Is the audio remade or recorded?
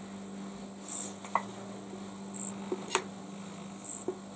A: recorded